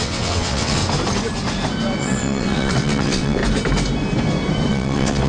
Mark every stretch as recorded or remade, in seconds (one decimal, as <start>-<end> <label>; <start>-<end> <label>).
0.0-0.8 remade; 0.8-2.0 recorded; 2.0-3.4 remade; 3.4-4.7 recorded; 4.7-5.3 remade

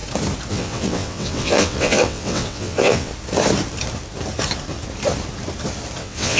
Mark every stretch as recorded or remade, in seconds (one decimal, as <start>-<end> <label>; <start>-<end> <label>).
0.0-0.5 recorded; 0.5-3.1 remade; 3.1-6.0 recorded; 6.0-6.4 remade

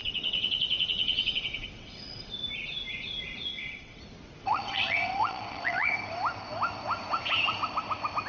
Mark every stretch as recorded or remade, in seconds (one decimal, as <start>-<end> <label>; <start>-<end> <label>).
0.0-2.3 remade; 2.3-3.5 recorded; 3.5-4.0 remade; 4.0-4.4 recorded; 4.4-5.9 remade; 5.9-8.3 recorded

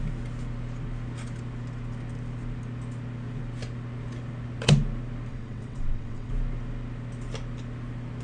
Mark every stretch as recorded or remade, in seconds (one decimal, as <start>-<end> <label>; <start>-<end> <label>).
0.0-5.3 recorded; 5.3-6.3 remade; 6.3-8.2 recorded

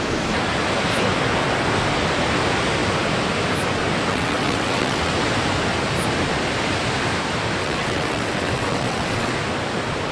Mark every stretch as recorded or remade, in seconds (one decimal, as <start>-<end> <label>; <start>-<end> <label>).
0.0-4.1 recorded; 4.1-5.1 remade; 5.1-7.6 recorded; 7.6-9.3 remade; 9.3-10.1 recorded

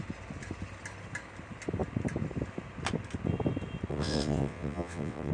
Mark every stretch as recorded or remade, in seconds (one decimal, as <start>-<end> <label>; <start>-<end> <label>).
0.0-3.9 recorded; 3.9-5.3 remade

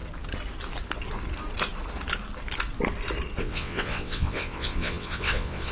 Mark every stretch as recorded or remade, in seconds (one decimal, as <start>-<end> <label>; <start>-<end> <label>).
0.0-3.4 recorded; 3.4-5.7 remade

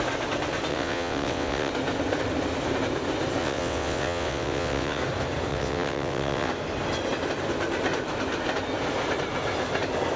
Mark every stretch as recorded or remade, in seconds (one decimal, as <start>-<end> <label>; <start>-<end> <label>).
0.0-0.7 recorded; 0.7-1.7 remade; 1.7-3.4 recorded; 3.4-5.0 remade; 5.0-5.5 recorded; 5.5-6.5 remade; 6.5-10.2 recorded